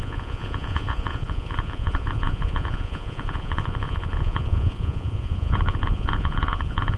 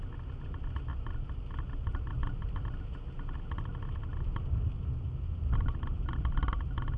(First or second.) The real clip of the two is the second